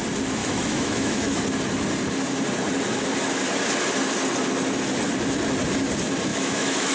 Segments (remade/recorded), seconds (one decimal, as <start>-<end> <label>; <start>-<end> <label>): 0.0-0.4 recorded; 0.4-1.4 remade; 1.4-6.3 recorded; 6.3-6.9 remade